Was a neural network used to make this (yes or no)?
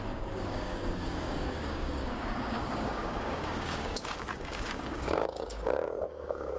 yes